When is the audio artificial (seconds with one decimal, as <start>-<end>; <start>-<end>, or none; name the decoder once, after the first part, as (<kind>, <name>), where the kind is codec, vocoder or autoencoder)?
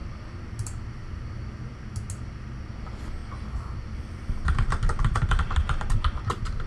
none